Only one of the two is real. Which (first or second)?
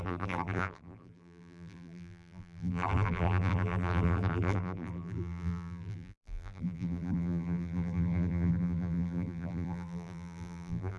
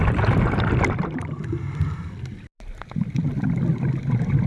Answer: second